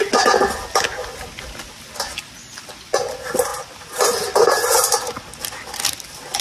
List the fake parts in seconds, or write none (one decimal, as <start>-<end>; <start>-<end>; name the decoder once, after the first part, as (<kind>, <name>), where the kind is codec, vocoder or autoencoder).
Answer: none